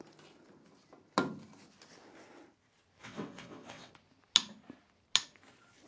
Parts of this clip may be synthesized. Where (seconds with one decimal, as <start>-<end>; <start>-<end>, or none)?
3.0-3.9